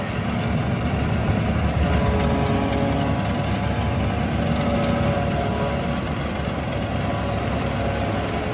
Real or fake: real